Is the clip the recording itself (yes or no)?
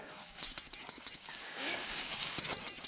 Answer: no